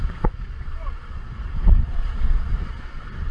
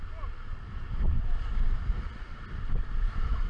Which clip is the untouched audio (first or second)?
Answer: second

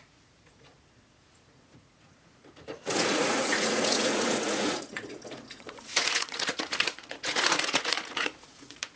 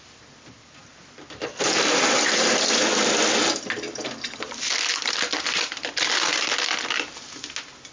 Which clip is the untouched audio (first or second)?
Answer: second